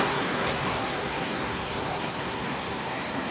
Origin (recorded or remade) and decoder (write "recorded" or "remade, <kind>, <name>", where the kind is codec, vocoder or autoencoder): remade, codec, SNAC